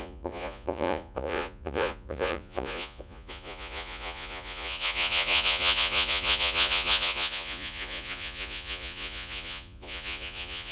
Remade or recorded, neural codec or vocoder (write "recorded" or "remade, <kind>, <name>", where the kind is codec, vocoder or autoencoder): remade, vocoder, Vocos